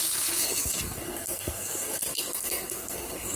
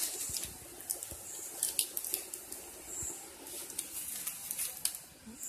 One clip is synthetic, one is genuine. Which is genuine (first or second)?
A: second